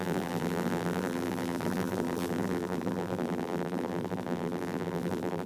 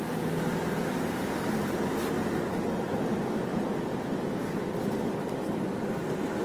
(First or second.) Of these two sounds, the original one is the second